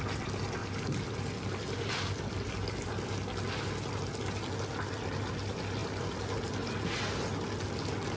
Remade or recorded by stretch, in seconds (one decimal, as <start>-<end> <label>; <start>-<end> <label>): 0.0-0.6 recorded; 0.6-3.1 remade; 3.1-5.8 recorded; 5.8-6.8 remade; 6.8-8.2 recorded